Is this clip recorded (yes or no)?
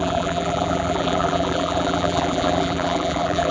no